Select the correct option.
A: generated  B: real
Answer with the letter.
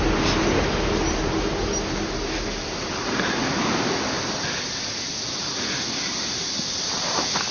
B